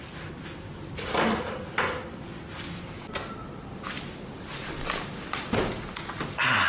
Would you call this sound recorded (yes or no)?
yes